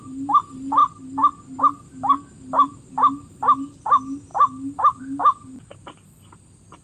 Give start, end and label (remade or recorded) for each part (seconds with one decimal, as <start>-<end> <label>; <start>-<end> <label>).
0.0-0.8 recorded; 0.8-1.6 remade; 1.6-6.8 recorded